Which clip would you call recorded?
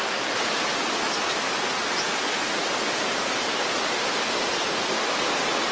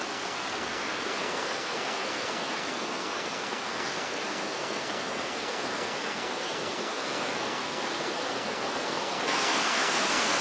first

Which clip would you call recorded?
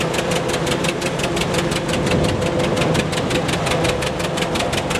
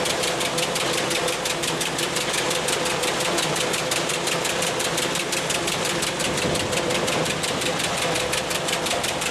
first